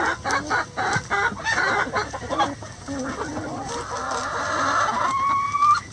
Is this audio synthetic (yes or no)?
no